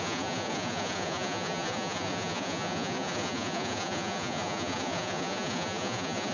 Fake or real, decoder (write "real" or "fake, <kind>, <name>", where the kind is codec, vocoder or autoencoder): fake, vocoder, Vocos